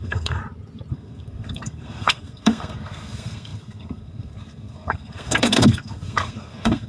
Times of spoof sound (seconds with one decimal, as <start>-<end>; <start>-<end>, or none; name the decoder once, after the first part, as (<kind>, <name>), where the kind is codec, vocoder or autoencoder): 0.0-0.4 (codec, SNAC); 0.9-6.9